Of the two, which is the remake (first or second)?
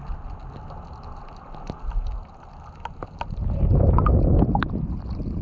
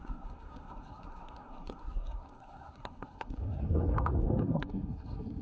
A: second